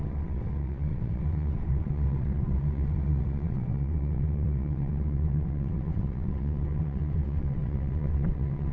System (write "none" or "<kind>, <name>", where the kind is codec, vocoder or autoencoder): vocoder, WaveNeXt